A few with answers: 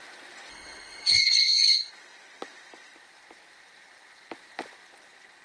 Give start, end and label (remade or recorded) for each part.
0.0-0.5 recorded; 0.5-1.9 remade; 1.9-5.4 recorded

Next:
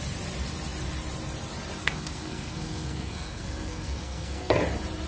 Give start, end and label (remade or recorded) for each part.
0.0-1.8 recorded; 1.8-4.6 remade; 4.6-5.1 recorded

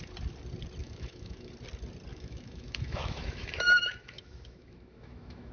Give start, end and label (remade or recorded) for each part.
0.0-0.8 recorded; 0.8-1.5 remade; 1.5-2.1 recorded; 2.1-5.5 remade

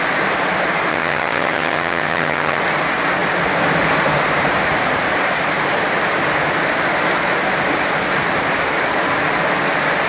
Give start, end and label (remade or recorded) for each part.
0.0-0.9 recorded; 0.9-2.6 remade; 2.6-10.1 recorded

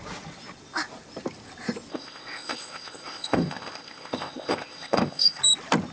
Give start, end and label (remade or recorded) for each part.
0.0-1.9 recorded; 1.9-5.4 remade; 5.4-5.9 recorded

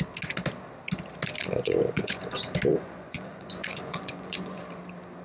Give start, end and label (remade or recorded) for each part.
0.0-1.4 recorded; 1.4-2.2 remade; 2.2-2.7 recorded; 2.7-4.6 remade; 4.6-5.2 recorded

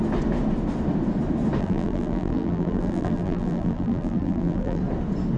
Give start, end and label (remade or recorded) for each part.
0.0-1.6 recorded; 1.6-4.8 remade; 4.8-5.4 recorded